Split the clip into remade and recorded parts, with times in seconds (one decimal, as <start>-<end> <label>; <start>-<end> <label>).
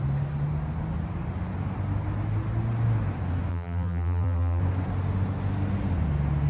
0.0-3.5 recorded; 3.5-4.6 remade; 4.6-6.5 recorded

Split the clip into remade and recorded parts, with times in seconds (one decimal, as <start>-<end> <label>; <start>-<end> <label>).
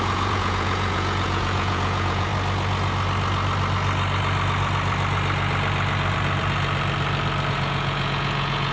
0.0-2.3 remade; 2.3-7.5 recorded; 7.5-8.7 remade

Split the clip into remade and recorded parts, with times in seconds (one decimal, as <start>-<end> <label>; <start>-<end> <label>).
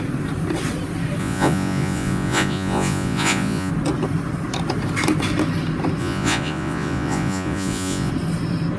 0.0-1.2 recorded; 1.2-3.7 remade; 3.7-6.0 recorded; 6.0-8.1 remade; 8.1-8.8 recorded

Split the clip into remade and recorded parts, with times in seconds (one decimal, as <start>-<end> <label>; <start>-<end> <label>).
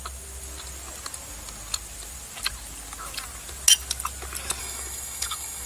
0.0-4.6 recorded; 4.6-5.7 remade